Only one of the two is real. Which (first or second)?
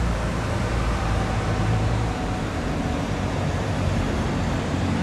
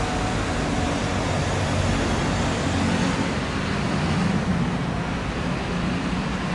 second